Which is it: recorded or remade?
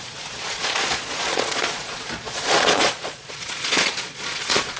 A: remade